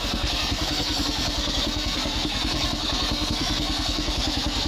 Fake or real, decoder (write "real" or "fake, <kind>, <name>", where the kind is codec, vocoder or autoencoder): fake, codec, SNAC